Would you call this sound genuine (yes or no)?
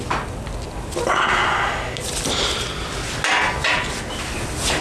yes